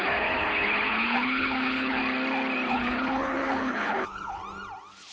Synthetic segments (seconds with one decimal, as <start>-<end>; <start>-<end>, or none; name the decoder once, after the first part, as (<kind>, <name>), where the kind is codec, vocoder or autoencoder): 0.0-2.0 (codec, HILCodec); 2.7-4.4